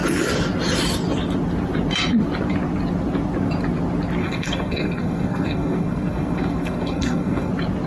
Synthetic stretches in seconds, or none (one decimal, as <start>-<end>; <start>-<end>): 4.2-7.5

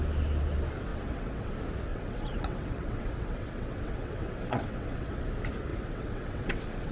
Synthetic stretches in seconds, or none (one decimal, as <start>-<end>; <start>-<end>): 0.9-1.5; 1.9-5.2; 5.7-6.9

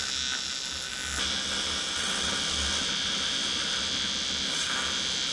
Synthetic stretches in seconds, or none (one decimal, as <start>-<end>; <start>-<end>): none

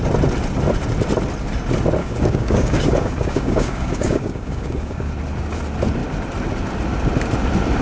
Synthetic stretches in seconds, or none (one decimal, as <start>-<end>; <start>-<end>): 2.0-5.1

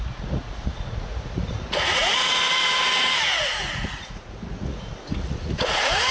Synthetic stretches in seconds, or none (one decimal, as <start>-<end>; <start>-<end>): 0.0-6.1

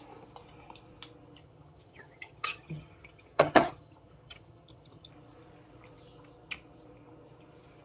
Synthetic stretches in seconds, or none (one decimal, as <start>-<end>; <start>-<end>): 1.4-5.1

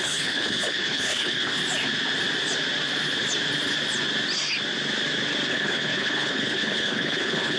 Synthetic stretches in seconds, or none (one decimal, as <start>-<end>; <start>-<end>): 0.0-1.6; 5.5-7.6

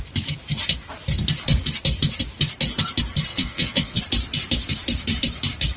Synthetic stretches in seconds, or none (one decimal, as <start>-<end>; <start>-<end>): 3.3-4.0